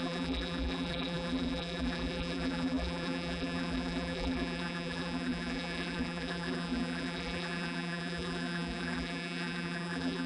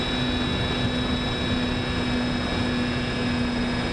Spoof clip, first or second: first